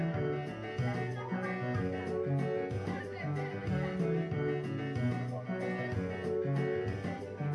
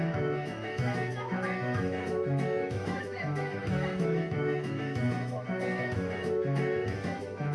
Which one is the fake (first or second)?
second